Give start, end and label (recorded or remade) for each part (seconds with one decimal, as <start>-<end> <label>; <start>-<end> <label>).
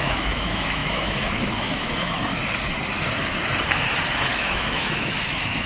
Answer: 0.0-2.4 remade; 2.4-4.3 recorded; 4.3-5.7 remade